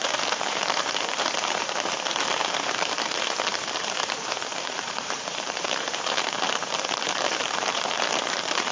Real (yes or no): no